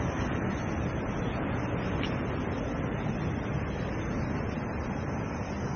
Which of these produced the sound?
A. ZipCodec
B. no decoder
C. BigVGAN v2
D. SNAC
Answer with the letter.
B